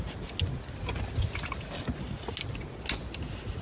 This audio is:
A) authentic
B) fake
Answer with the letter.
A